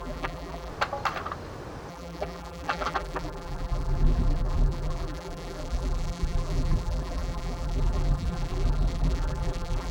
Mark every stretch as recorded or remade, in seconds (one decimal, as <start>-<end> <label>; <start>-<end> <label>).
0.0-0.7 remade; 0.7-1.9 recorded; 1.9-9.9 remade